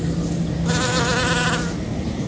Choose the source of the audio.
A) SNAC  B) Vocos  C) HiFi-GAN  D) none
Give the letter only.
D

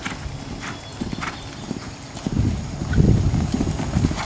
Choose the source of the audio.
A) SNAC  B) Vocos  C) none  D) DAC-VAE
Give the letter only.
C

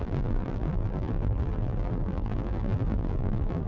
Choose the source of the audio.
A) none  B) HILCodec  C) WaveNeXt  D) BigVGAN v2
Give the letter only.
D